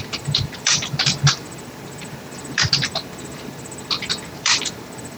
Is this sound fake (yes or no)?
yes